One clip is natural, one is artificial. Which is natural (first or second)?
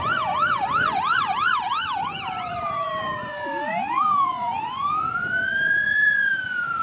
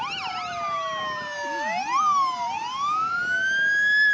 second